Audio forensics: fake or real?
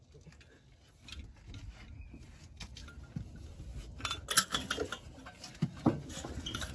real